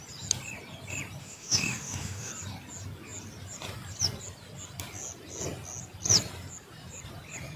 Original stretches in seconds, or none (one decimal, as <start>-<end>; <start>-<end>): 0.0-1.2; 2.3-7.6